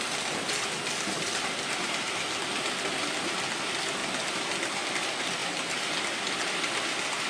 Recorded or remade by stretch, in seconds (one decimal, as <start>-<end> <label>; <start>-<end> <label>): 0.0-7.3 recorded